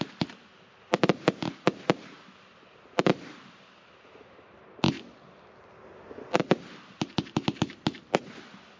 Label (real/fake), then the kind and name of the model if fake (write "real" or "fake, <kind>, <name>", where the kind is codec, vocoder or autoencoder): real